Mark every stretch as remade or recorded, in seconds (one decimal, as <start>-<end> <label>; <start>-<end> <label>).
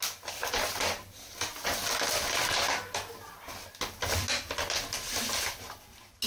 0.0-6.3 recorded